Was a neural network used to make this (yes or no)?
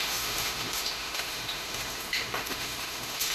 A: yes